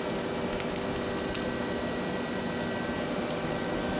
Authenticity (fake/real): real